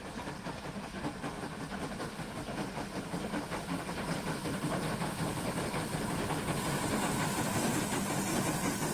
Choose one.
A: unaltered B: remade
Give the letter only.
A